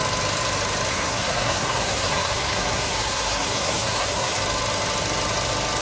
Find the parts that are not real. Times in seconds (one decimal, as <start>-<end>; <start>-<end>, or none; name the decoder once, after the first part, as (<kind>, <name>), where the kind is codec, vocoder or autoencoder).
0.9-4.4 (codec, SNAC)